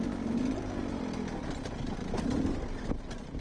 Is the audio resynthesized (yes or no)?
no